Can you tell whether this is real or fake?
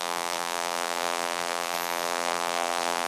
fake